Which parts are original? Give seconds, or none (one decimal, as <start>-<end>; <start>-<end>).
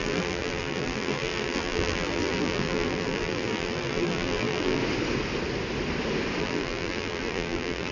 4.8-6.4